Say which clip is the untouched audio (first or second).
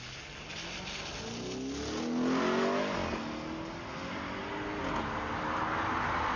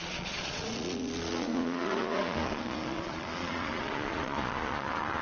first